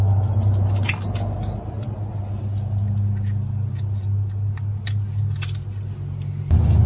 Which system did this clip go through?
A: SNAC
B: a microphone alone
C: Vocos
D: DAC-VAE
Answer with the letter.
B